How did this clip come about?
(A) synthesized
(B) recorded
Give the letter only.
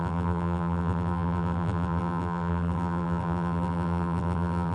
A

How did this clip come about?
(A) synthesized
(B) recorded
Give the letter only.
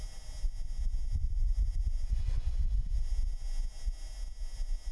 B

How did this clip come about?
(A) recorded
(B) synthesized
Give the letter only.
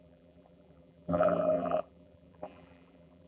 B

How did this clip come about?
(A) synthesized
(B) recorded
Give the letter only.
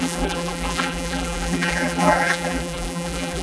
A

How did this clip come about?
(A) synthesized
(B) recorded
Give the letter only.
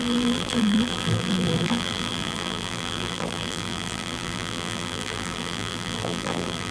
A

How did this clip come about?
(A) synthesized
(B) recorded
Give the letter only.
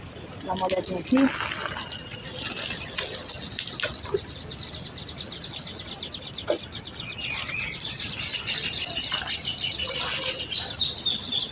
B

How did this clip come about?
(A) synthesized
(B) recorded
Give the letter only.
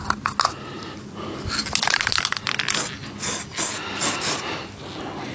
B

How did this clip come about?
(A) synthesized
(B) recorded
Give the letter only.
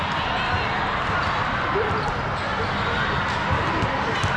B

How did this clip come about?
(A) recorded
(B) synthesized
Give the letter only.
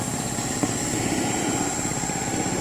B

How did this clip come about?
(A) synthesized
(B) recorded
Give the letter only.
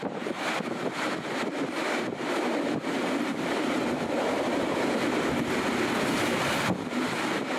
A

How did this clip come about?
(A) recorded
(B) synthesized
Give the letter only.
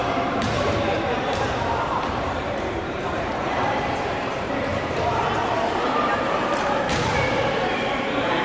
B